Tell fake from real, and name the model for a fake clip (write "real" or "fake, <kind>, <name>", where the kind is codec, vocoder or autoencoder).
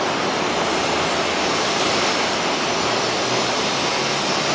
real